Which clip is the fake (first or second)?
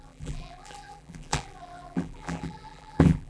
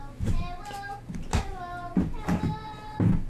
first